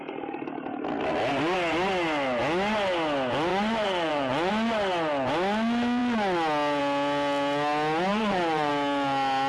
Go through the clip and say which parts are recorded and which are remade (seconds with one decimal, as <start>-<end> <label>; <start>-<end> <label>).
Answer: 0.0-3.5 recorded; 3.5-4.5 remade; 4.5-8.1 recorded; 8.1-8.7 remade; 8.7-9.5 recorded